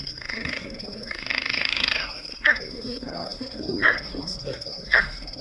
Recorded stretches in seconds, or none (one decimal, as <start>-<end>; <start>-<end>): none